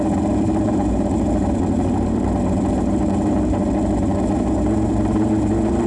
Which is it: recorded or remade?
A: remade